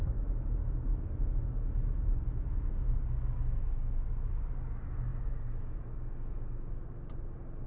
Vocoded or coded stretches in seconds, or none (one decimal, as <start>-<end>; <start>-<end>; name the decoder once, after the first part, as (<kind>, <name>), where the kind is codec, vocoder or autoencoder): none